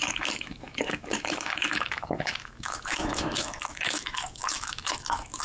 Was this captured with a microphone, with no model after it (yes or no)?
no